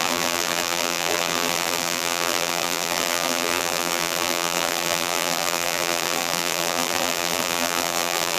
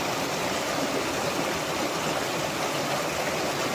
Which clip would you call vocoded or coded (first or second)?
first